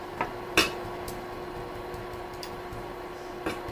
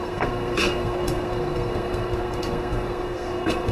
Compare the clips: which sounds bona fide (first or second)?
first